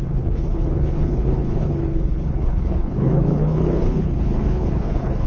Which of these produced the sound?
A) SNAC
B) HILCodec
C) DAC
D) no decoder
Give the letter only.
B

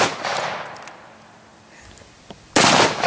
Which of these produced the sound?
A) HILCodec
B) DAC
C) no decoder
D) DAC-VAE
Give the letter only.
C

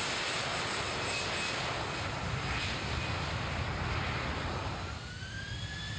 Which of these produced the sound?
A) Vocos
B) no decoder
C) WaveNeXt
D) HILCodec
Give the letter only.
B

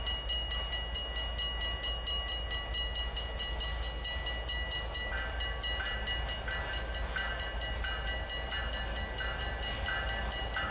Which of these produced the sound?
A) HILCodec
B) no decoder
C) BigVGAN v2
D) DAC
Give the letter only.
B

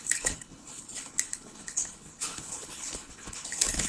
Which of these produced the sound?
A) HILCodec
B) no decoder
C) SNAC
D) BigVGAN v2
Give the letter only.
A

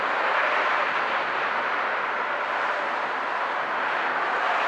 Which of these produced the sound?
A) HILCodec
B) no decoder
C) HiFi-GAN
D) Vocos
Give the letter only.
B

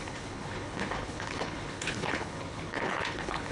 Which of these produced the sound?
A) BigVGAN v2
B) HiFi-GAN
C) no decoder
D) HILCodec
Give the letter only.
D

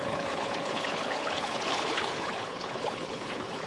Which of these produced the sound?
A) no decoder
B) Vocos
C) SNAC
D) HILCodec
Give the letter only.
D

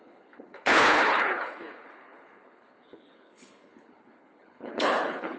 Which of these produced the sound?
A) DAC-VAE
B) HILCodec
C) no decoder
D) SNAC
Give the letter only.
B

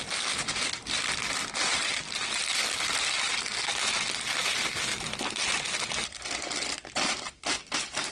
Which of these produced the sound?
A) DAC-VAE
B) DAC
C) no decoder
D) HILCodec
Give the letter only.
C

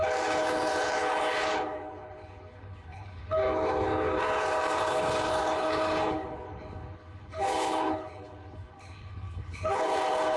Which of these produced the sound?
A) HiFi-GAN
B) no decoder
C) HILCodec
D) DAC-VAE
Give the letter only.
C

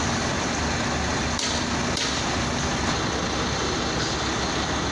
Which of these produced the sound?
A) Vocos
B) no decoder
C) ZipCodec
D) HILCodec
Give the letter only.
B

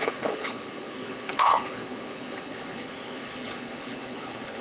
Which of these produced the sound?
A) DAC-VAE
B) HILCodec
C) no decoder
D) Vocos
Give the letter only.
B